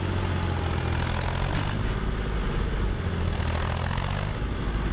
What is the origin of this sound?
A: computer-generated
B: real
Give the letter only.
B